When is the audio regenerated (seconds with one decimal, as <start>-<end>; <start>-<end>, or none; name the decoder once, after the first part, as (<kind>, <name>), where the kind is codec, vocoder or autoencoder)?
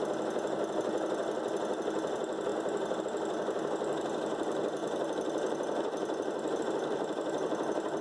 none